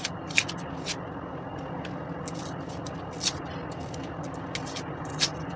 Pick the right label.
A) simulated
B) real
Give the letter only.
B